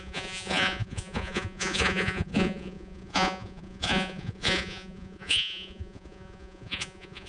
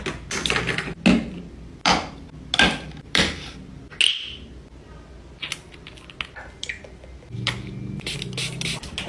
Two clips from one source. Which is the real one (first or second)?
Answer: second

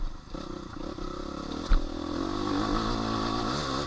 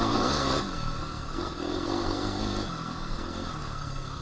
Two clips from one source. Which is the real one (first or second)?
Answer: first